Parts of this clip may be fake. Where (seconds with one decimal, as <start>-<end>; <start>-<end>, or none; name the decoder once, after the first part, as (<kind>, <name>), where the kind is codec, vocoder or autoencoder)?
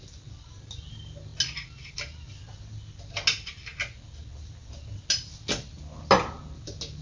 none